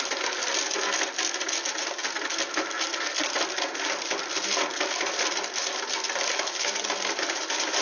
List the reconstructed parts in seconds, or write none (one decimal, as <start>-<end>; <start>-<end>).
none